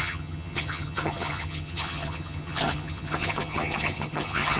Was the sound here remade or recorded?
remade